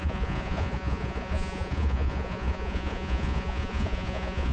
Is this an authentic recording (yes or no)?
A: no